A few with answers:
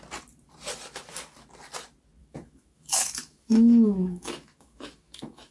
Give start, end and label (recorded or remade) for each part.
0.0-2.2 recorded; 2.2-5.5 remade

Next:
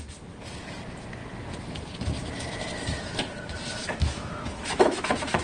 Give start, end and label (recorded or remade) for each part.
0.0-3.8 recorded; 3.8-5.4 remade

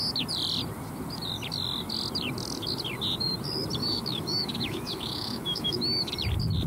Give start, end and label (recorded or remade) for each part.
0.0-3.8 recorded; 3.8-6.1 remade; 6.1-6.7 recorded

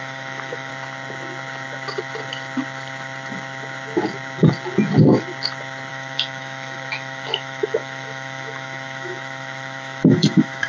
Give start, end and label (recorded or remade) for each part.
0.0-0.7 remade; 0.7-5.9 recorded; 5.9-10.7 remade

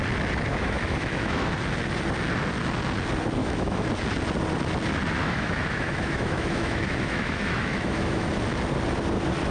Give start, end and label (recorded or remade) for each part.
0.0-0.5 recorded; 0.5-1.6 remade; 1.6-3.4 recorded; 3.4-3.9 remade; 3.9-5.2 recorded; 5.2-8.3 remade; 8.3-9.5 recorded